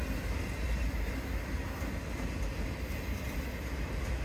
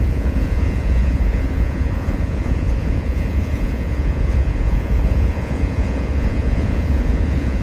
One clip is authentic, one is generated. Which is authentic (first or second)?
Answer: first